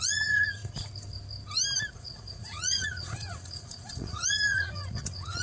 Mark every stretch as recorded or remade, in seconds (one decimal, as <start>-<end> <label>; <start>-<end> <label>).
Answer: 0.0-0.6 remade; 0.6-1.9 recorded; 1.9-5.4 remade